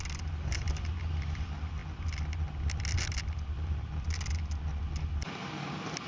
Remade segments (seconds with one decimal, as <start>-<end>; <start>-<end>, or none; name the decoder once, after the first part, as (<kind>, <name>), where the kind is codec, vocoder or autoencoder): none